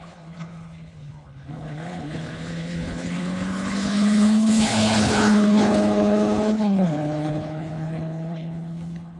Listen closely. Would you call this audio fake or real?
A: fake